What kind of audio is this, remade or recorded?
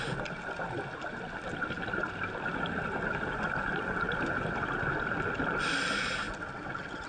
recorded